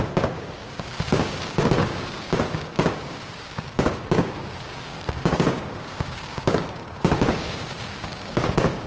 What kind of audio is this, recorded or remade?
remade